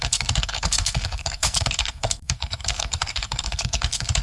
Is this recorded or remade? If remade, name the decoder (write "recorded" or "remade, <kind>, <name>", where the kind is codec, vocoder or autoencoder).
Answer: remade, codec, SNAC